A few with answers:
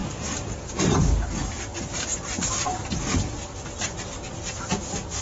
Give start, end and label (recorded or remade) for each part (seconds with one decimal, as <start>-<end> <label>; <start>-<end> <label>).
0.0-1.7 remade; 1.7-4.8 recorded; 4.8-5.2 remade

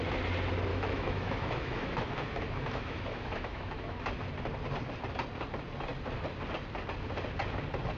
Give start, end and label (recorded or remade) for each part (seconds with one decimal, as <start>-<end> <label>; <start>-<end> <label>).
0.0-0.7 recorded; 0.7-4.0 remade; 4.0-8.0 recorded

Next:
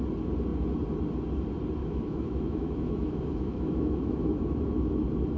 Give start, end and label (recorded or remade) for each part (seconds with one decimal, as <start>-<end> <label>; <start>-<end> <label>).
0.0-1.8 recorded; 1.8-4.9 remade; 4.9-5.4 recorded

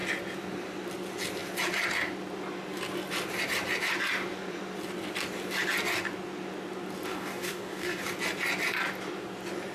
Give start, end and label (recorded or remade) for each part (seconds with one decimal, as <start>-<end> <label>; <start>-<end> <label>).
0.0-7.1 recorded; 7.1-8.0 remade; 8.0-9.7 recorded

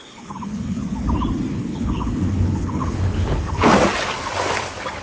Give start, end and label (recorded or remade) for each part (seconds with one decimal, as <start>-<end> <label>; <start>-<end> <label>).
0.0-0.8 remade; 0.8-1.5 recorded; 1.5-3.7 remade; 3.7-5.0 recorded

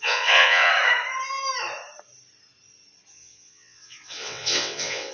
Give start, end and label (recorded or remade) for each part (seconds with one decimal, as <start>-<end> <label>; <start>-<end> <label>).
0.0-0.7 remade; 0.7-3.1 recorded; 3.1-5.1 remade

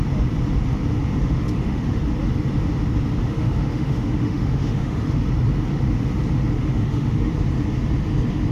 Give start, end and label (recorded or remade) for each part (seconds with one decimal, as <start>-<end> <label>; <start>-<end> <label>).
0.0-1.2 recorded; 1.2-2.0 remade; 2.0-3.2 recorded; 3.2-5.2 remade; 5.2-6.6 recorded; 6.6-7.3 remade; 7.3-8.5 recorded

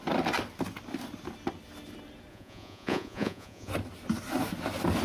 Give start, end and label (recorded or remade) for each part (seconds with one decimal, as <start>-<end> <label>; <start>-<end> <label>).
0.0-2.3 recorded; 2.3-3.7 remade; 3.7-5.0 recorded